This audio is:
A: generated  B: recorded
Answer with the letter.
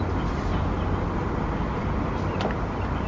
B